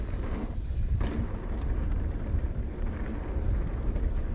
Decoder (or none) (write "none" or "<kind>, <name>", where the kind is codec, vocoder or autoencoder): none